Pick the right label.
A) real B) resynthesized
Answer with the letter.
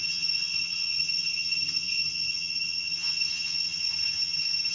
B